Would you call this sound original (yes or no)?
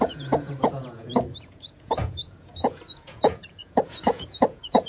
no